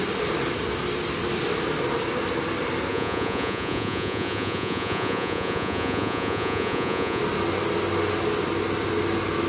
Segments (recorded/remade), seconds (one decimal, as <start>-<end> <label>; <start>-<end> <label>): 0.0-2.9 recorded; 2.9-7.2 remade; 7.2-9.5 recorded